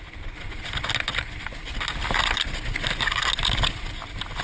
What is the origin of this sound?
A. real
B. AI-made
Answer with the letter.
A